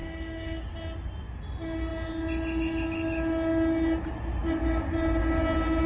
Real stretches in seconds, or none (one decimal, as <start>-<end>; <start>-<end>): 0.7-5.9